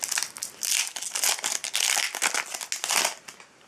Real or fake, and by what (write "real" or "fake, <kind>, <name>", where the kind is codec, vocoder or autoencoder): real